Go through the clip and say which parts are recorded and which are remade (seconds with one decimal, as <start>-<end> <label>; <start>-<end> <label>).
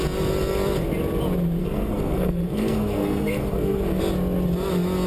0.0-1.6 recorded; 1.6-4.0 remade; 4.0-5.1 recorded